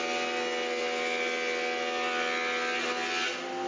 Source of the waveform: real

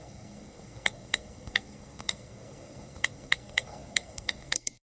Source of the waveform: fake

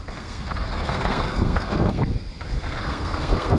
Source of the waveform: fake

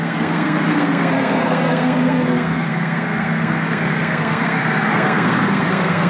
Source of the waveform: fake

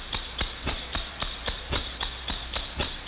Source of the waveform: fake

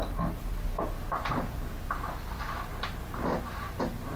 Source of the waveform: real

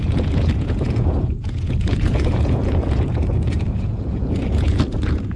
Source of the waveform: fake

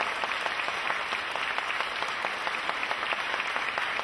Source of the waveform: real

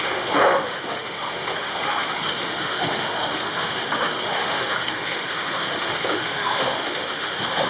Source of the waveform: fake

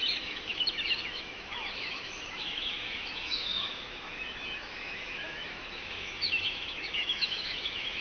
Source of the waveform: fake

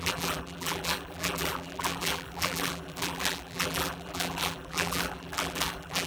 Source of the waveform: fake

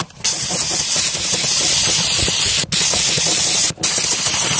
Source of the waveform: real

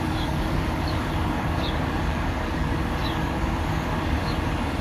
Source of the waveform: fake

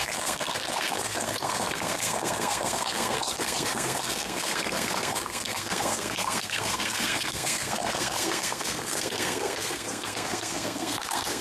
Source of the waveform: fake